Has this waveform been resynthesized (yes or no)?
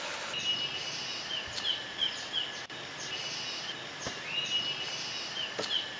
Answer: no